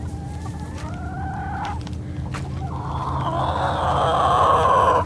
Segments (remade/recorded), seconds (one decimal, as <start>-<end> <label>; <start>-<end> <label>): 0.0-5.1 recorded